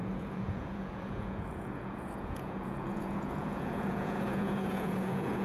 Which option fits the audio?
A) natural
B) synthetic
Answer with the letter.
B